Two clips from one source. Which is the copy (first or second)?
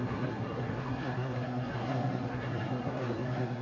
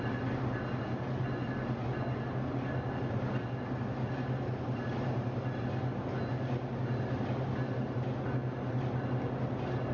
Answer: first